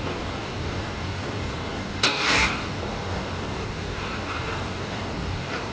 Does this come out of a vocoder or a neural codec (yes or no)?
yes